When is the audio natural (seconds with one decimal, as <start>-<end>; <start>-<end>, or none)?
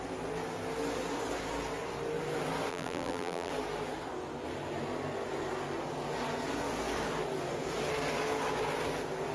0.0-2.7; 3.5-9.3